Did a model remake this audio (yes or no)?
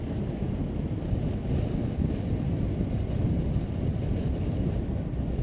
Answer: yes